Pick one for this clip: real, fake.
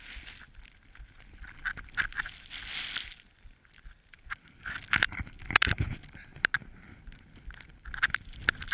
real